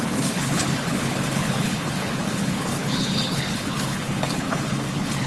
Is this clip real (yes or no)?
no